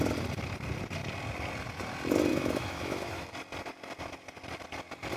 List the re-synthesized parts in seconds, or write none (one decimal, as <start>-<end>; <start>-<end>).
2.3-3.3